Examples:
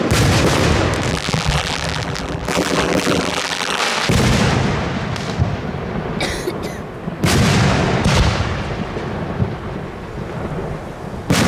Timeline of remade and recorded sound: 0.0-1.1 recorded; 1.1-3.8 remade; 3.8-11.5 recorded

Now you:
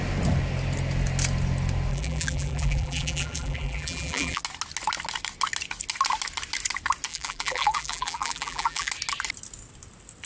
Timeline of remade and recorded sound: 0.0-1.9 recorded; 1.9-4.4 remade; 4.4-7.1 recorded; 7.1-8.9 remade; 8.9-10.3 recorded

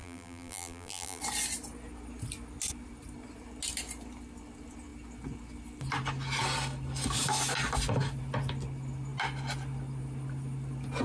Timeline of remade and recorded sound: 0.0-1.2 remade; 1.2-11.0 recorded

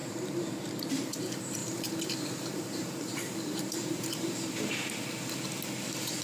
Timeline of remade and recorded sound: 0.0-0.7 remade; 0.7-1.6 recorded; 1.6-4.7 remade; 4.7-6.2 recorded

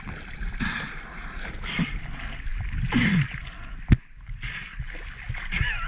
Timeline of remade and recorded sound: 0.0-5.9 recorded

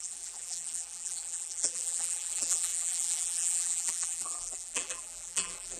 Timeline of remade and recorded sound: 0.0-5.8 remade

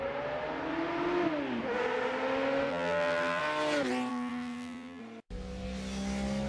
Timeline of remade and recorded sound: 0.0-2.7 recorded; 2.7-3.4 remade; 3.4-4.1 recorded; 4.1-5.0 remade; 5.0-6.5 recorded

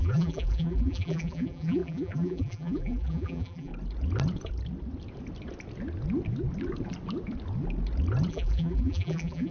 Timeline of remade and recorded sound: 0.0-3.7 remade; 3.7-8.3 recorded; 8.3-9.5 remade